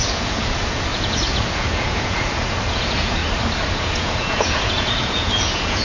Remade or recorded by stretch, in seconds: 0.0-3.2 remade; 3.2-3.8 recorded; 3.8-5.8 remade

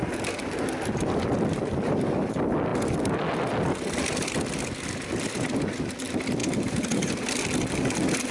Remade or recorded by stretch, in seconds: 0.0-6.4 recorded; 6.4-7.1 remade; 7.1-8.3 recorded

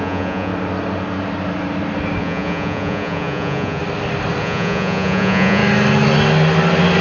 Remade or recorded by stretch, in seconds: 0.0-0.5 remade; 0.5-2.2 recorded; 2.2-3.8 remade; 3.8-4.4 recorded; 4.4-5.6 remade; 5.6-7.0 recorded

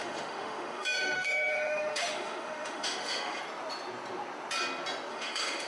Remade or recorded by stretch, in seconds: 0.0-3.4 remade; 3.4-5.1 recorded; 5.1-5.7 remade

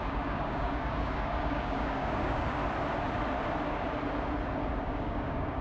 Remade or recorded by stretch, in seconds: 0.0-2.6 remade; 2.6-4.8 recorded; 4.8-5.6 remade

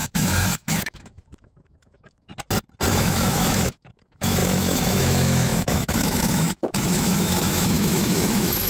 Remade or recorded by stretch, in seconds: 0.0-2.3 remade; 2.3-2.9 recorded; 2.9-8.7 remade